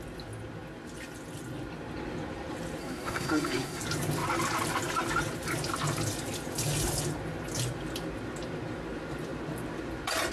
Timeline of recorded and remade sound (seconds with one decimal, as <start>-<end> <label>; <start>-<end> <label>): 0.0-2.8 recorded; 2.8-3.8 remade; 3.8-10.3 recorded